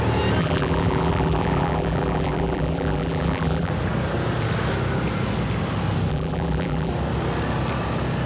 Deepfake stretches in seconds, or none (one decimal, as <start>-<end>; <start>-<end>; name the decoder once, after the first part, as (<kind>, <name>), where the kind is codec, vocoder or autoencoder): 0.4-3.7 (vocoder, BigVGAN v2); 6.1-6.9

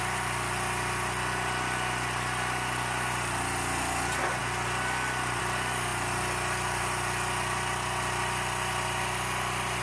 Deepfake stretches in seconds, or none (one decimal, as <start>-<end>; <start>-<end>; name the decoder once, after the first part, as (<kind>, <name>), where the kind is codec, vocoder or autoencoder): none

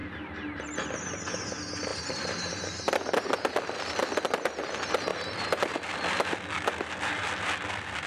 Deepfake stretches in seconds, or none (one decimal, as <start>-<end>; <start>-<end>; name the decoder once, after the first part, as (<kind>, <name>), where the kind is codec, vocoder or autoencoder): 0.0-0.6 (vocoder, BigVGAN v2); 1.9-4.1; 5.1-5.9

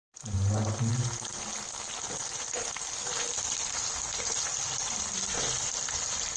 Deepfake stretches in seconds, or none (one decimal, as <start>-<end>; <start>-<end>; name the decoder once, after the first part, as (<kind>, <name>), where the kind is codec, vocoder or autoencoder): none

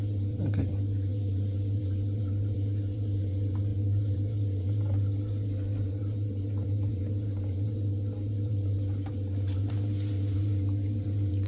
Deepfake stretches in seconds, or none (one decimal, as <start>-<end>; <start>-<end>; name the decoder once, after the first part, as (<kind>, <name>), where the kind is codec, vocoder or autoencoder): 0.0-11.5 (vocoder, BigVGAN v2)

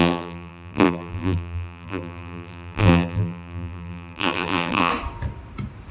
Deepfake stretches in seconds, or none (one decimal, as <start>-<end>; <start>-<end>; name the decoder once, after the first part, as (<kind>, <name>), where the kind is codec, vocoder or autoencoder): 0.0-4.9 (vocoder, BigVGAN v2)

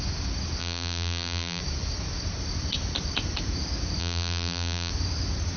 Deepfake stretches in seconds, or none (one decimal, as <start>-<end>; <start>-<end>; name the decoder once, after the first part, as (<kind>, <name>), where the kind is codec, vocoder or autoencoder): 0.6-1.6 (vocoder, BigVGAN v2); 4.0-4.9

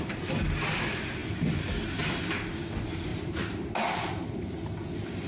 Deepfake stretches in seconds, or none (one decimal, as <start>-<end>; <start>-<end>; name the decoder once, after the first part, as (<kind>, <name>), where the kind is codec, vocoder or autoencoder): 3.1-4.4 (vocoder, BigVGAN v2)